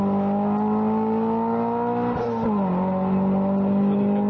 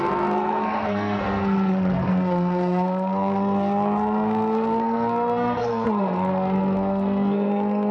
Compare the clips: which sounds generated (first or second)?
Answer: second